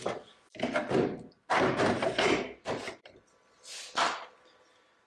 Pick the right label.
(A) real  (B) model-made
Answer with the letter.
A